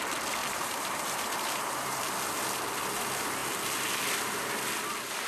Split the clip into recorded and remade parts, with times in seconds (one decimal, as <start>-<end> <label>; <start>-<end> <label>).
0.0-0.4 recorded; 0.4-2.1 remade; 2.1-5.3 recorded

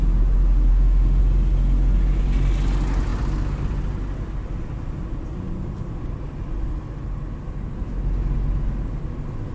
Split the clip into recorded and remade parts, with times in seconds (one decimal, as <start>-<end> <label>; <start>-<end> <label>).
0.0-0.7 recorded; 0.7-1.2 remade; 1.2-9.5 recorded

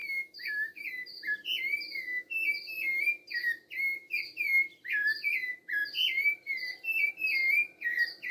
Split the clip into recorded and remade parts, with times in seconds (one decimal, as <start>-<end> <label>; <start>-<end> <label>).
0.0-0.8 remade; 0.8-8.3 recorded

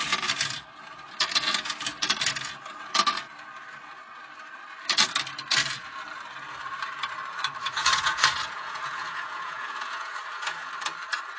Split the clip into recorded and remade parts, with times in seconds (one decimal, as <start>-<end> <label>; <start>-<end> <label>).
0.0-7.6 recorded; 7.6-10.7 remade; 10.7-11.4 recorded

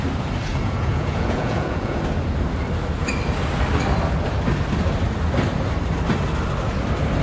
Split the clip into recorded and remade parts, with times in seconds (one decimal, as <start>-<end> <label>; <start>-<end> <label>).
0.0-0.5 recorded; 0.5-2.0 remade; 2.0-7.2 recorded